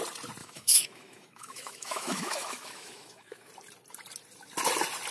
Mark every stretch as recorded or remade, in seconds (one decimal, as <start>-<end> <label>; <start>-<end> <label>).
0.0-0.4 recorded; 0.4-3.5 remade; 3.5-5.1 recorded